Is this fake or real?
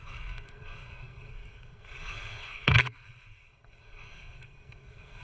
fake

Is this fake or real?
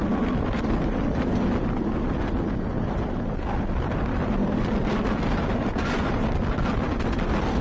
real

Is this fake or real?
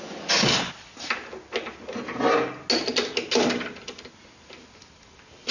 real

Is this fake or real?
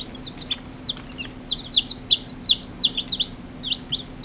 real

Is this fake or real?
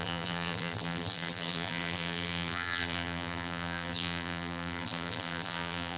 fake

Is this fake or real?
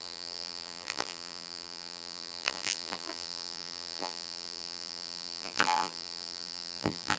fake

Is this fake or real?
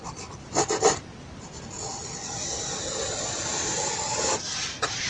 real